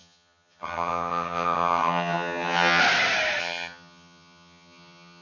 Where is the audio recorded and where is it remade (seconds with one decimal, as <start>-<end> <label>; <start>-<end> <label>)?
0.0-2.8 remade; 2.8-3.4 recorded; 3.4-5.2 remade

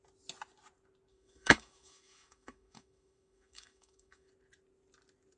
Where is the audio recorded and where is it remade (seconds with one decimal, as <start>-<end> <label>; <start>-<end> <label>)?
0.0-1.1 recorded; 1.1-4.3 remade; 4.3-5.4 recorded

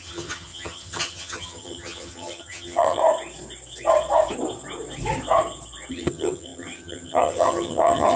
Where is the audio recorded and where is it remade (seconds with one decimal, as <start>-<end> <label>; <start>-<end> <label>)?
0.0-3.0 remade; 3.0-5.9 recorded; 5.9-8.2 remade

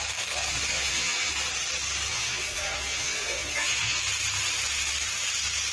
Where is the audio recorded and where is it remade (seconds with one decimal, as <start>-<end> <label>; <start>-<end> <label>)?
0.0-0.7 recorded; 0.7-1.3 remade; 1.3-2.1 recorded; 2.1-4.0 remade; 4.0-5.7 recorded

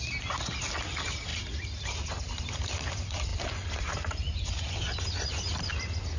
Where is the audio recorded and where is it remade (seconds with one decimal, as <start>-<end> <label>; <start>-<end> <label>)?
0.0-6.2 recorded

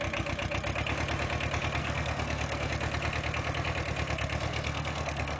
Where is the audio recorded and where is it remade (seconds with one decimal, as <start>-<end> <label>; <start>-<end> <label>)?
0.0-1.8 recorded; 1.8-2.7 remade; 2.7-4.5 recorded; 4.5-5.4 remade